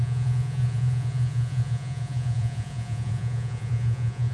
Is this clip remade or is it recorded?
remade